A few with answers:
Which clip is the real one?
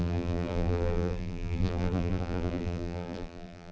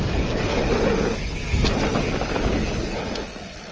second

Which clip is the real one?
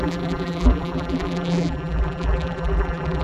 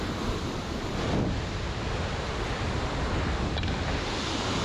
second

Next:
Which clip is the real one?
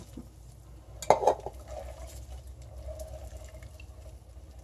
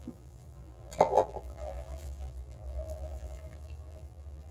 first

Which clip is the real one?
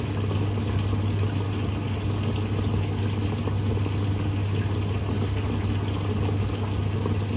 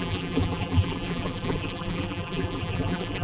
first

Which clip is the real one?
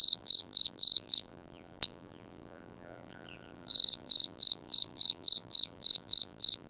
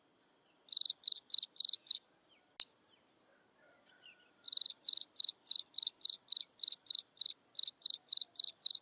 second